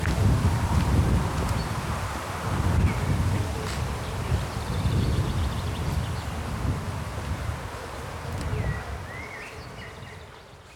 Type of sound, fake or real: fake